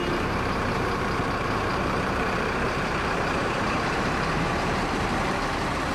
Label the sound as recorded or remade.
remade